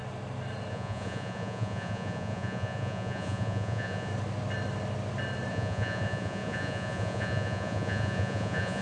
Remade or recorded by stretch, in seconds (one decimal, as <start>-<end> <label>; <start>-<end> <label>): 0.0-0.7 recorded; 0.7-4.1 remade; 4.1-5.5 recorded; 5.5-8.8 remade